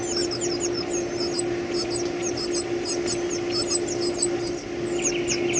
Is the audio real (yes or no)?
yes